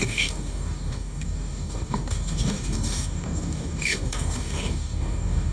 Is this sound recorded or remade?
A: remade